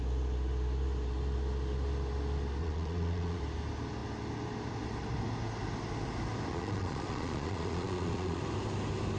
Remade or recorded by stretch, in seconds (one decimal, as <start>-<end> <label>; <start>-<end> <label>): 0.0-2.6 recorded; 2.6-3.4 remade; 3.4-6.5 recorded; 6.5-8.4 remade; 8.4-9.2 recorded